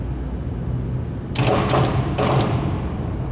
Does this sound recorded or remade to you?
recorded